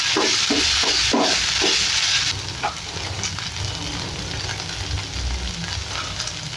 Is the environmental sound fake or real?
real